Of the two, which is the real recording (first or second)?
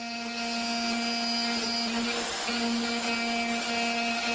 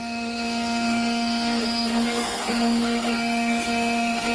first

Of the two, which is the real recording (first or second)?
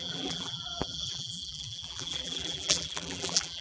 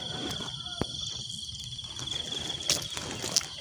second